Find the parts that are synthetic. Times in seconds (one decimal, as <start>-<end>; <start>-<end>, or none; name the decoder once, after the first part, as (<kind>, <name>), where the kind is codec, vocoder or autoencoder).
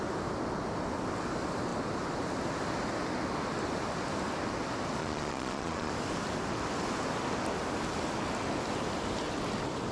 5.0-5.9 (vocoder, Vocos)